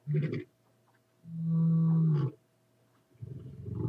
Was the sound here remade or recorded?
recorded